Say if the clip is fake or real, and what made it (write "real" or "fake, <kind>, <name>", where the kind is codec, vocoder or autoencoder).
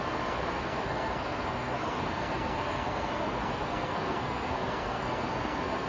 fake, codec, SNAC